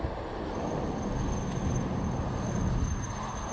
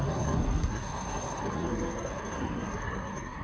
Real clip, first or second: first